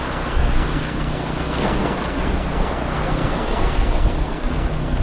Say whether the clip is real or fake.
fake